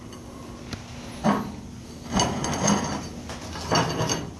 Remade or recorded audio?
recorded